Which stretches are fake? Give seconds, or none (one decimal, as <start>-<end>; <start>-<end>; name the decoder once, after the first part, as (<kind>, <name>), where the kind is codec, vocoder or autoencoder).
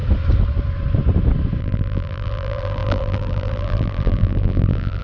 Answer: 1.6-5.0 (vocoder, BigVGAN v2)